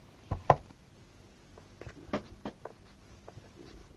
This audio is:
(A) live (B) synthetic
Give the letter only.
A